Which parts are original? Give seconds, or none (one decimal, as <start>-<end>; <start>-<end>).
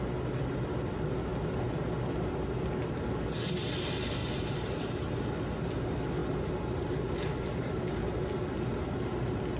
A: 0.0-4.2; 5.2-6.2; 7.8-9.6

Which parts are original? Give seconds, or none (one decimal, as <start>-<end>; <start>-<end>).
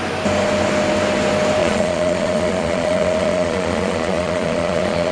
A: 0.0-1.6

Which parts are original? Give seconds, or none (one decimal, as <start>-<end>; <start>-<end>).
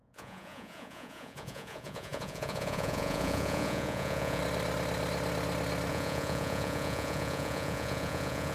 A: 4.4-5.9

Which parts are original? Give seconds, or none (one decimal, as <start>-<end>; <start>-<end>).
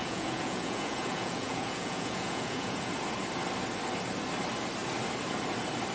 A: 2.9-5.9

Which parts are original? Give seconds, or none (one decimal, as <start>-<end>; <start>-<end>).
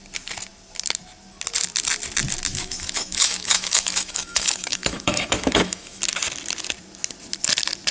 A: 0.0-2.5; 6.0-7.9